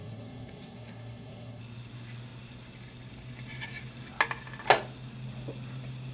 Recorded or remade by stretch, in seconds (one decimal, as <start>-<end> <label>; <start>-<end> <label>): 0.0-1.6 remade; 1.6-6.1 recorded